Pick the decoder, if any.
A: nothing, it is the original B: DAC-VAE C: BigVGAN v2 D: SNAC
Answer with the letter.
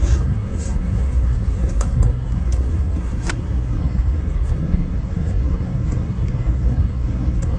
D